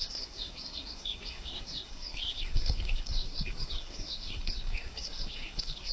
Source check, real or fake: fake